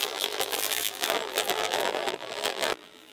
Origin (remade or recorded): remade